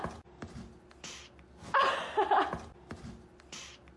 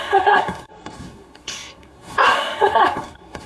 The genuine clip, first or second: first